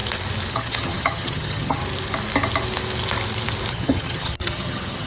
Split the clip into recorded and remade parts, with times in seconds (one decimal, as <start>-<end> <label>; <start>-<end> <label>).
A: 0.0-0.5 recorded; 0.5-1.8 remade; 1.8-3.7 recorded; 3.7-5.1 remade